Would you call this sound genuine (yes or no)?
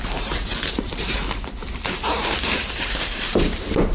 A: no